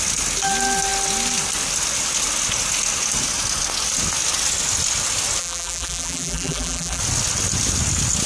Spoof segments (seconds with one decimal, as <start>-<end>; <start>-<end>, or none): 5.4-7.0